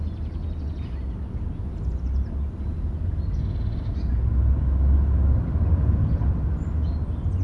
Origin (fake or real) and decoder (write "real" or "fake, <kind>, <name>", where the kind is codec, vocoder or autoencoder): real